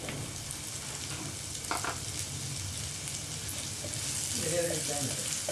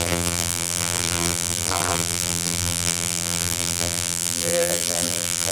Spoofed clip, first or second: second